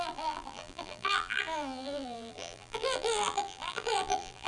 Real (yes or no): no